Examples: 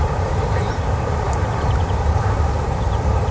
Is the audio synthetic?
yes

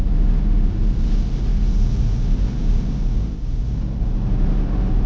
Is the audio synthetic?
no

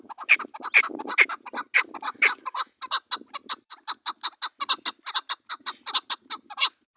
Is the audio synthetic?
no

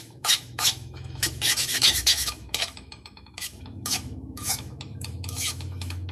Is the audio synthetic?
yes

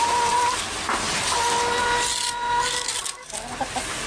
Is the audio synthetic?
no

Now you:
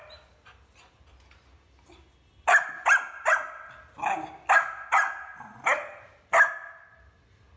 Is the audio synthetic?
no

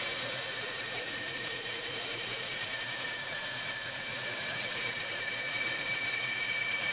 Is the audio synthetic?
yes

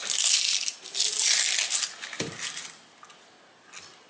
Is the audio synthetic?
no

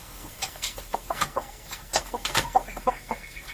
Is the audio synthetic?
yes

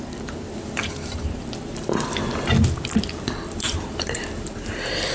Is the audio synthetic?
yes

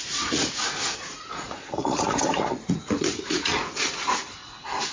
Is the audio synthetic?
yes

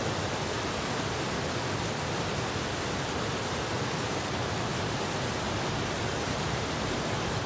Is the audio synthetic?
no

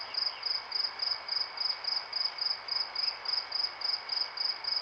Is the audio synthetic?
no